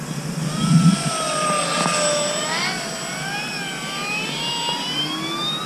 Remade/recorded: recorded